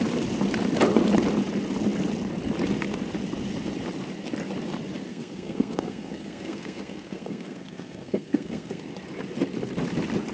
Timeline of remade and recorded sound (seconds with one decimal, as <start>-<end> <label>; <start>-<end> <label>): 0.0-5.1 recorded; 5.1-8.8 remade; 8.8-10.3 recorded